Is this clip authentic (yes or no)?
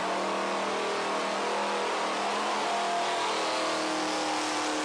yes